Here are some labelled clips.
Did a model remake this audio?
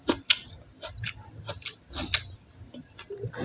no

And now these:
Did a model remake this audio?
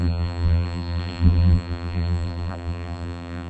yes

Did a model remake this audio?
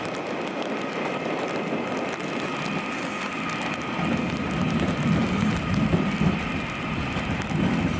no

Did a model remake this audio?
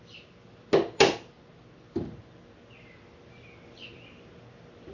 no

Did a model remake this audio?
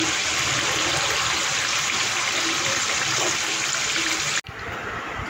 no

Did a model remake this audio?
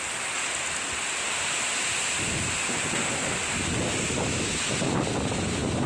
no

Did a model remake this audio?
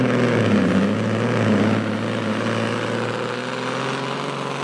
no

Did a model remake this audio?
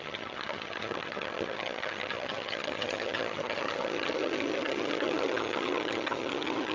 yes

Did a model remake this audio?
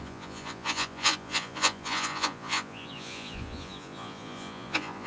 yes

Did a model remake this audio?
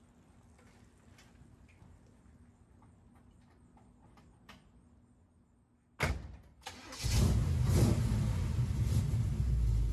no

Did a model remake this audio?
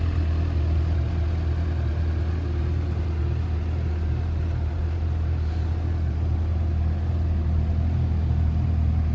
no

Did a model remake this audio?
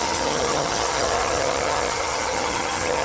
yes